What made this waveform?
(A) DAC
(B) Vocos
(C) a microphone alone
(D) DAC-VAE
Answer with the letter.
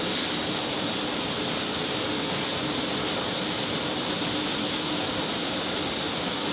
C